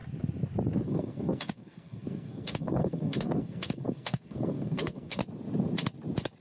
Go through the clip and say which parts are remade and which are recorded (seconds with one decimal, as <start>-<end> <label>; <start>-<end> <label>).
0.0-0.8 recorded; 0.8-5.2 remade; 5.2-6.4 recorded